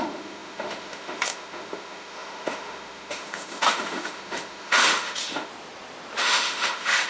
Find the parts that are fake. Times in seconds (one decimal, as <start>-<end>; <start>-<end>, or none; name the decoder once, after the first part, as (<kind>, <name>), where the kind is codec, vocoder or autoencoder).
0.0-5.5 (autoencoder, DAC-VAE); 6.2-7.1